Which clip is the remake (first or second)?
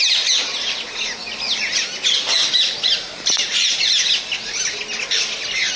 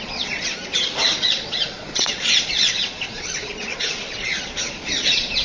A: second